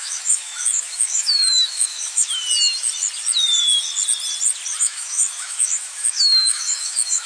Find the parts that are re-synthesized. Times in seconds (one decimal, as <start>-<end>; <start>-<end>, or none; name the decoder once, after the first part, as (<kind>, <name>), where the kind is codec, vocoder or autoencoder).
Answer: 0.0-2.3 (autoencoder, DAC-VAE); 4.8-7.3